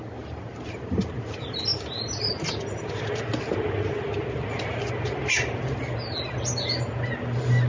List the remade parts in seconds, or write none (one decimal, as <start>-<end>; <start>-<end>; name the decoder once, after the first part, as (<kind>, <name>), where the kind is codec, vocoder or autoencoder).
none